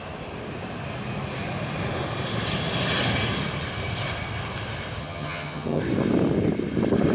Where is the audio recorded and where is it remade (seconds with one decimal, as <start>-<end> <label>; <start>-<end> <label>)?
0.0-5.0 recorded; 5.0-5.8 remade; 5.8-7.1 recorded